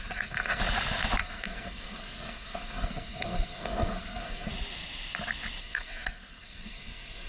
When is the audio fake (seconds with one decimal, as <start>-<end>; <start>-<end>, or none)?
0.0-0.6; 1.2-4.5; 5.6-7.3